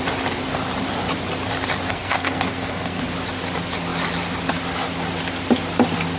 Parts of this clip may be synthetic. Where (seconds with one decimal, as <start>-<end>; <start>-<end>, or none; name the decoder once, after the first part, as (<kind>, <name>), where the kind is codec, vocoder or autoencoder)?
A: 1.9-3.0 (codec, SNAC)